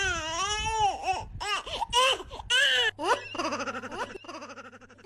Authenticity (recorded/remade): recorded